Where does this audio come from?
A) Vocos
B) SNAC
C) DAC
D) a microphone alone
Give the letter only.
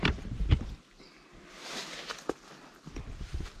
D